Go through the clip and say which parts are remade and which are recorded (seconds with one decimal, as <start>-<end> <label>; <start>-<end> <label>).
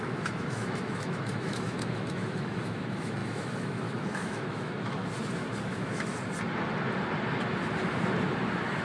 0.0-5.0 remade; 5.0-5.6 recorded; 5.6-6.1 remade; 6.1-8.8 recorded